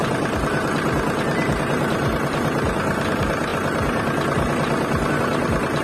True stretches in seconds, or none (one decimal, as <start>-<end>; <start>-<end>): 0.0-5.8